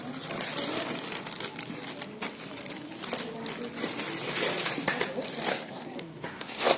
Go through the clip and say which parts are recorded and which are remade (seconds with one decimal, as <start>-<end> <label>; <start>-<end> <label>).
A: 0.0-5.5 recorded; 5.5-6.8 remade